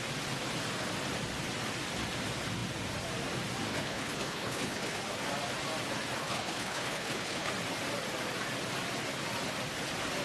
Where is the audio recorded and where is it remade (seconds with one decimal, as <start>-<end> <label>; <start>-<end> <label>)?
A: 0.0-3.7 recorded; 3.7-5.0 remade; 5.0-6.2 recorded; 6.2-7.5 remade; 7.5-10.2 recorded